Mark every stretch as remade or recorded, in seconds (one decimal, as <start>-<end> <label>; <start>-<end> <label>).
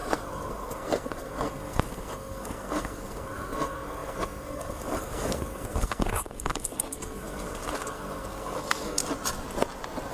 0.0-9.0 remade; 9.0-10.1 recorded